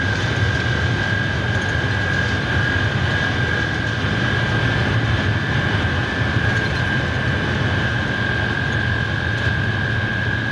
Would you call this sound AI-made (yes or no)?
no